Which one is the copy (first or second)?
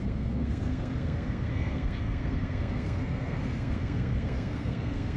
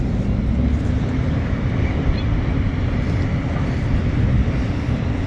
first